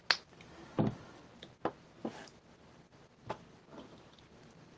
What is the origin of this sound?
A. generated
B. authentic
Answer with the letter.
B